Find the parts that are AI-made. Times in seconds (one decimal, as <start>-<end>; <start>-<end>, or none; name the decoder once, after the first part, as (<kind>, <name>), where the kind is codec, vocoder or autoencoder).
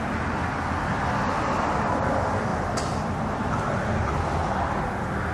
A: none